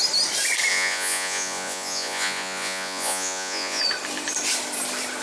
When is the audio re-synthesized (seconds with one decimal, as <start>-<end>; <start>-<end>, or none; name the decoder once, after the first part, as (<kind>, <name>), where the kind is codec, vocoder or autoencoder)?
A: 0.7-3.8 (vocoder, Vocos)